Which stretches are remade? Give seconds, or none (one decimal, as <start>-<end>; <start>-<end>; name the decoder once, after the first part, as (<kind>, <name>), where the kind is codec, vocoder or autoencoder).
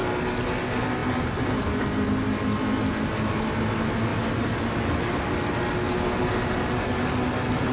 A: none